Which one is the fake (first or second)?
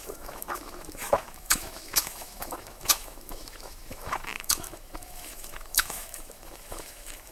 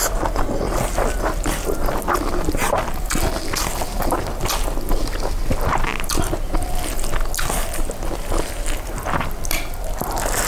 first